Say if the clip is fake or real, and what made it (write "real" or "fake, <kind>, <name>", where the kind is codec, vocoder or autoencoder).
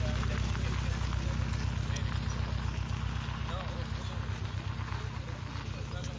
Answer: real